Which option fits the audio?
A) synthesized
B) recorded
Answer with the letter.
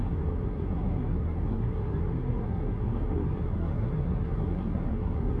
A